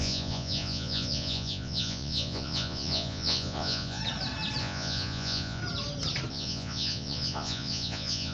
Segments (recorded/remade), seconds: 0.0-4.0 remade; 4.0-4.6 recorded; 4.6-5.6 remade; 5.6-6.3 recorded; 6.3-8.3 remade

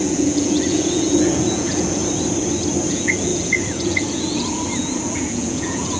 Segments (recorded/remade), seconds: 0.0-2.0 remade; 2.0-2.9 recorded; 2.9-6.0 remade